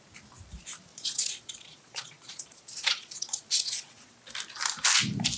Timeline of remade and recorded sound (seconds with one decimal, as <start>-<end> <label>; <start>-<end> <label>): 0.0-0.9 recorded; 0.9-4.1 remade; 4.1-5.4 recorded